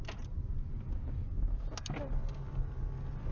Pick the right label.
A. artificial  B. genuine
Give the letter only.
B